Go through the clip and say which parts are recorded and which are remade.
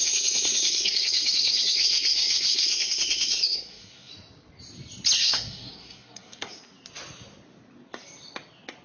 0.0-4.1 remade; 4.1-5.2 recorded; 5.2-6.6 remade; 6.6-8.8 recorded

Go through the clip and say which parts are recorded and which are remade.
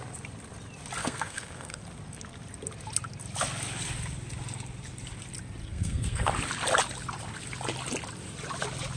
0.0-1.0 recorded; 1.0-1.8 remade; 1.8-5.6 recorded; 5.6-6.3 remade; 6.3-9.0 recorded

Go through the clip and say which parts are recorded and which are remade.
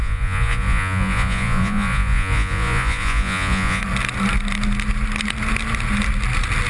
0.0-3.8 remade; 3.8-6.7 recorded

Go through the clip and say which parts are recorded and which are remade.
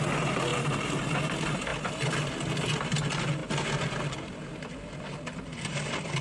0.0-0.5 recorded; 0.5-1.1 remade; 1.1-6.2 recorded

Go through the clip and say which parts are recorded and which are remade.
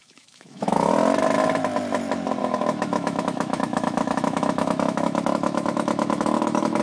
0.0-0.9 remade; 0.9-2.4 recorded; 2.4-6.8 remade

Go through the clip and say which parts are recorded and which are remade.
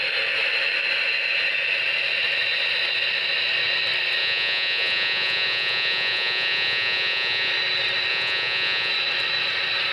0.0-4.2 recorded; 4.2-7.5 remade; 7.5-8.1 recorded; 8.1-8.9 remade; 8.9-9.9 recorded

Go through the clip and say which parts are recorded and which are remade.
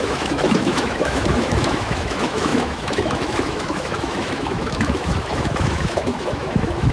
0.0-6.9 remade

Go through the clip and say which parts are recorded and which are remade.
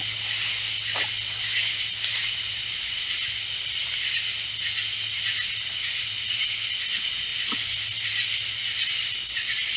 0.0-9.8 recorded